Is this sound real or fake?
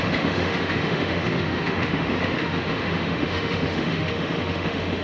fake